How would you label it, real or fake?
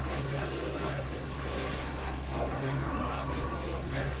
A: fake